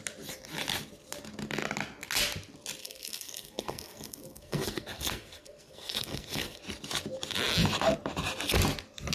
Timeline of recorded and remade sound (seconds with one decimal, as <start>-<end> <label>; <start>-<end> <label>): 0.0-2.8 recorded; 2.8-6.6 remade; 6.6-9.1 recorded